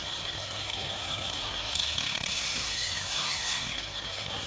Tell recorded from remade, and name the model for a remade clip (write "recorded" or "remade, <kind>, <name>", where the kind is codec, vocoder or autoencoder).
remade, codec, SNAC